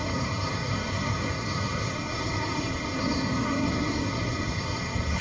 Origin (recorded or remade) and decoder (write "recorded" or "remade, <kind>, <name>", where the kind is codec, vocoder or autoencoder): remade, codec, SNAC